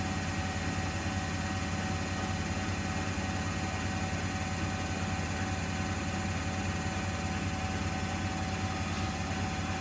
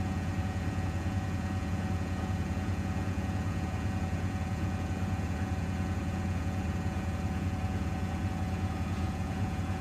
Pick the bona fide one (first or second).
first